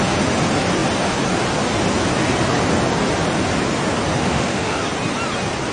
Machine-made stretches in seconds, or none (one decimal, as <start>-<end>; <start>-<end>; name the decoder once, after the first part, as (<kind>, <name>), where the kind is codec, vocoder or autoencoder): 4.2-4.8 (autoencoder, DAC-VAE)